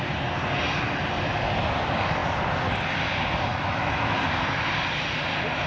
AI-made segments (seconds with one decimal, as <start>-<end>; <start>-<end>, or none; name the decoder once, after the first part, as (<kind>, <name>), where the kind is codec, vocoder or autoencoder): 3.5-4.2 (autoencoder, DAC-VAE)